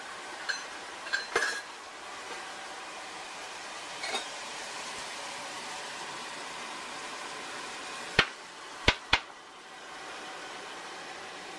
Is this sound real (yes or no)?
no